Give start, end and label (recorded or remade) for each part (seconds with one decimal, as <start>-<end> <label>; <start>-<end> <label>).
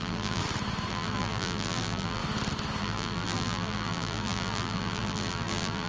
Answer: 0.0-0.4 remade; 0.4-0.9 recorded; 0.9-2.2 remade; 2.2-2.8 recorded; 2.8-5.9 remade